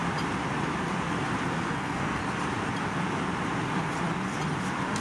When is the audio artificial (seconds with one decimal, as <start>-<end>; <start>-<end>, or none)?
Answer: 1.6-2.2